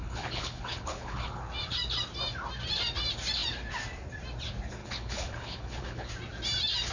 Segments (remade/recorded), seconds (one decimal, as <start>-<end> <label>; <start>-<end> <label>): 0.0-1.4 remade; 1.4-4.8 recorded; 4.8-6.1 remade; 6.1-6.9 recorded